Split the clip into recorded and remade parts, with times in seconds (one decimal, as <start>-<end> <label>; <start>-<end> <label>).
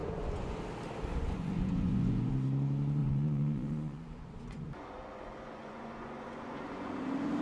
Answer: 0.0-0.6 remade; 0.6-1.1 recorded; 1.1-2.3 remade; 2.3-3.0 recorded; 3.0-6.9 remade; 6.9-7.4 recorded